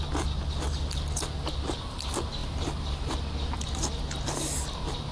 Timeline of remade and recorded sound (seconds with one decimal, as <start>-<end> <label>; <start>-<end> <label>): 0.0-2.4 recorded; 2.4-3.1 remade; 3.1-5.1 recorded

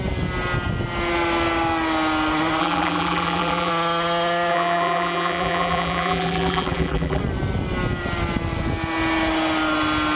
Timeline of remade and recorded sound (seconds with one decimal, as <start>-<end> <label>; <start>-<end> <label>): 0.0-2.6 recorded; 2.6-3.7 remade; 3.7-4.5 recorded; 4.5-7.2 remade; 7.2-10.2 recorded

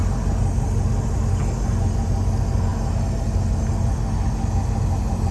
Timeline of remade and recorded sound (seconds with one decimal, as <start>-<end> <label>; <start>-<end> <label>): 0.0-5.3 recorded

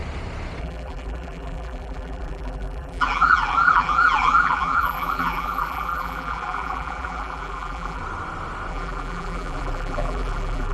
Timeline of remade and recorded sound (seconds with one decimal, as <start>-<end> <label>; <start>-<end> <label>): 0.0-0.6 recorded; 0.6-8.0 remade; 8.0-8.7 recorded; 8.7-10.7 remade

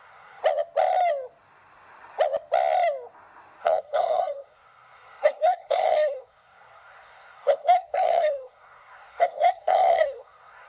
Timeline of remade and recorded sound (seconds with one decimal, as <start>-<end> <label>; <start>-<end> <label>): 0.0-0.4 remade; 0.4-3.6 recorded; 3.6-10.7 remade

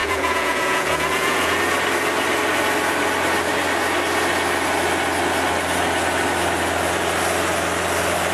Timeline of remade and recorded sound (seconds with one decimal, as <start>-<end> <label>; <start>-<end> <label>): 0.0-1.6 remade; 1.6-8.3 recorded

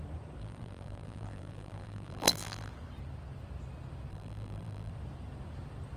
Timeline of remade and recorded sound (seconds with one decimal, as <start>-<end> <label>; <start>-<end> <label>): 0.0-0.4 recorded; 0.4-2.7 remade; 2.7-4.1 recorded; 4.1-4.9 remade; 4.9-6.0 recorded